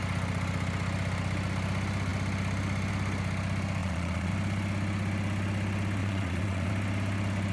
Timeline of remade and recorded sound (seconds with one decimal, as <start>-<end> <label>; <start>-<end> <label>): 0.0-3.8 recorded; 3.8-4.3 remade; 4.3-6.0 recorded; 6.0-6.7 remade; 6.7-7.5 recorded